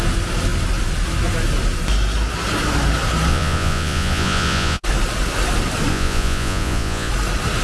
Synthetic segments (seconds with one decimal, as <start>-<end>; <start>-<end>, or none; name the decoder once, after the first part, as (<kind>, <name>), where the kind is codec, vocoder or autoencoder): 3.3-4.8 (vocoder, Vocos); 5.9-7.1